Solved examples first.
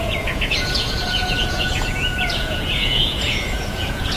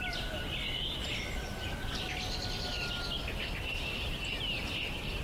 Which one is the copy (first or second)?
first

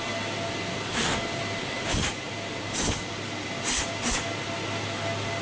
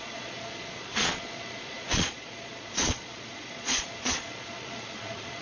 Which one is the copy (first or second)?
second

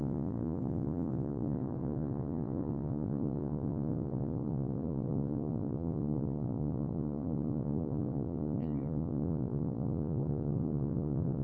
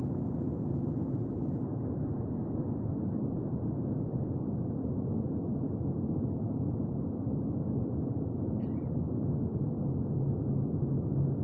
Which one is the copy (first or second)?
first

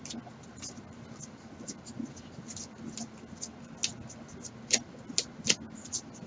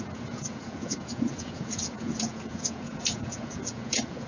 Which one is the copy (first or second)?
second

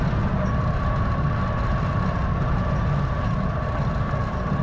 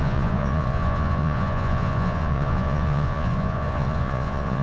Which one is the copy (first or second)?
second